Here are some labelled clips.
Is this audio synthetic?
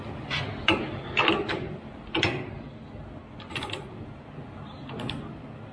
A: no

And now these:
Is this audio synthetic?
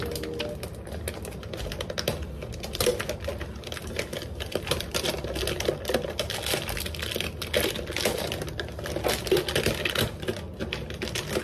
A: no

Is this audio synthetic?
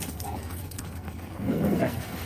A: yes